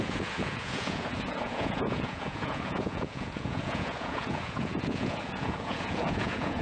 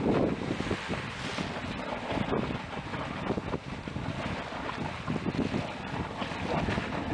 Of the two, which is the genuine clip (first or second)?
second